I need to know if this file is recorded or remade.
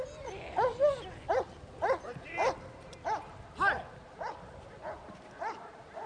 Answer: recorded